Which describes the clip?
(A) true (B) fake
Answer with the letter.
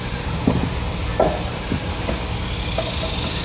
A